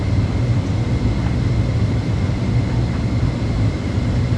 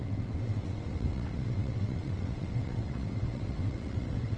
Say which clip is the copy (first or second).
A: second